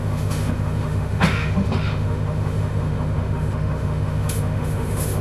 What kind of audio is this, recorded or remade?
remade